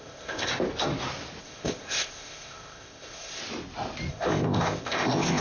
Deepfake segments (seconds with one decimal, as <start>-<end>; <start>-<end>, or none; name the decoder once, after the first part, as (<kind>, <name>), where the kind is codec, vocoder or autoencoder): 0.0-0.5 (codec, ZipCodec); 1.4-3.4; 4.1-5.4